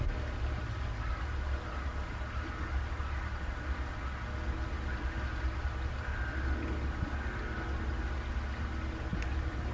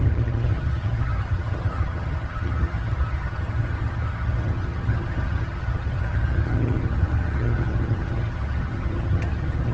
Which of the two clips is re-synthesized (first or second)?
second